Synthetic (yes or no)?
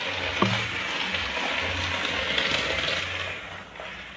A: no